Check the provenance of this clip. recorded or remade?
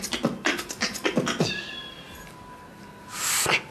recorded